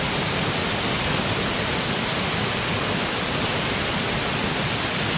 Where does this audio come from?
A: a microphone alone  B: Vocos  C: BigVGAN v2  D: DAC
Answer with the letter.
A